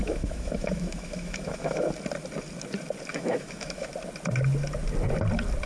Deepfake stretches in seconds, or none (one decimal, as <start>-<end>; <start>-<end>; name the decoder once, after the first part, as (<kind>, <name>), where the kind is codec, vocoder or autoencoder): 0.0-1.9 (autoencoder, DAC-VAE); 3.1-3.9